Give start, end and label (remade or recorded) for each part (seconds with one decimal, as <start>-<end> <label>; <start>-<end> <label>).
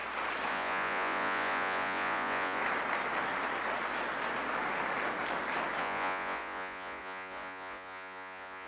0.0-0.5 recorded; 0.5-2.6 remade; 2.6-5.8 recorded; 5.8-8.7 remade